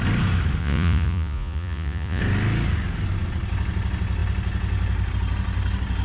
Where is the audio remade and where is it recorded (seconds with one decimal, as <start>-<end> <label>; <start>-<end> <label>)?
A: 0.0-0.6 recorded; 0.6-2.2 remade; 2.2-6.0 recorded